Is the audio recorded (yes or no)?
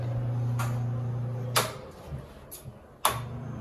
yes